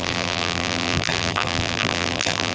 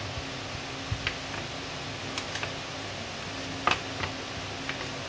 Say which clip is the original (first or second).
second